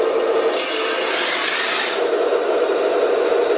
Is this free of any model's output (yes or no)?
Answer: yes